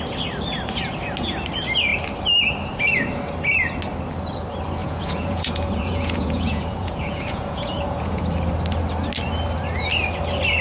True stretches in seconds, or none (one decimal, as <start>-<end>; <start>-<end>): 0.0-4.8; 8.2-10.6